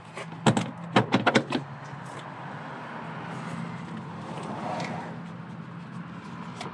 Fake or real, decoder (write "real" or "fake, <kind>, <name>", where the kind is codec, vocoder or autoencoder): real